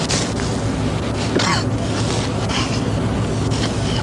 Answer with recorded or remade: recorded